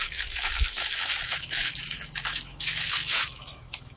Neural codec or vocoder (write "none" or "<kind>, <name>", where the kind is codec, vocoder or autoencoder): autoencoder, DAC-VAE